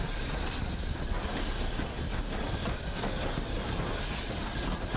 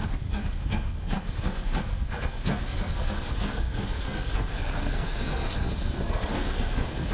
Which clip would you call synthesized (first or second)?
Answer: second